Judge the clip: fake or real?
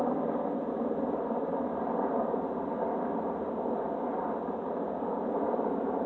real